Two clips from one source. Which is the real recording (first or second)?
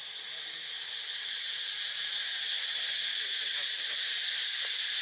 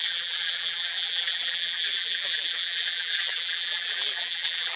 first